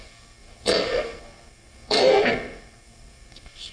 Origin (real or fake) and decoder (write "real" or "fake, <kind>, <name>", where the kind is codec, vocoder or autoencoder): fake, codec, SNAC